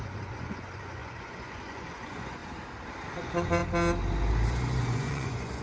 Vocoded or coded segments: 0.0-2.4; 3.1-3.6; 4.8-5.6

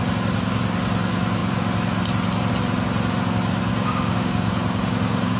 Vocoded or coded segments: 3.7-5.4

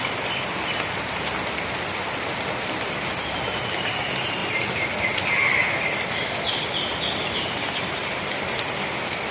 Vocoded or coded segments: none

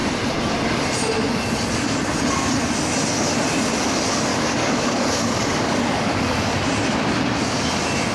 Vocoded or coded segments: 4.3-6.2

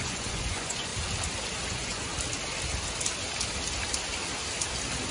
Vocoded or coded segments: 0.0-0.9; 1.7-2.1

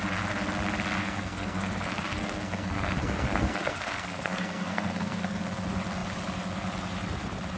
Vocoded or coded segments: 1.0-5.4